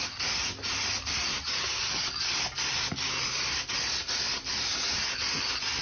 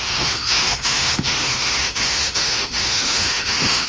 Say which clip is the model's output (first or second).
second